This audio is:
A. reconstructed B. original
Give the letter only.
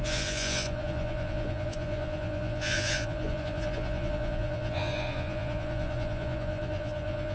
A